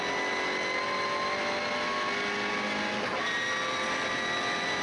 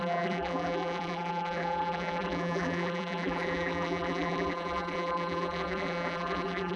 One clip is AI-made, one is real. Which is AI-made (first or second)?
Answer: second